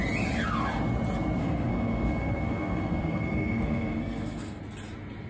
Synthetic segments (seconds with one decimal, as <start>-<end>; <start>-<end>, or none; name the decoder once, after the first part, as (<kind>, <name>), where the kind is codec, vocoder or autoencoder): 1.4-4.6 (codec, SNAC)